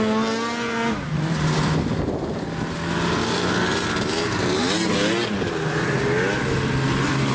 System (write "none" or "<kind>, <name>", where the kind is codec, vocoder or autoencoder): none